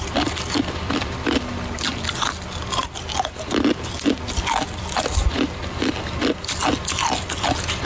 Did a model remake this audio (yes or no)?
no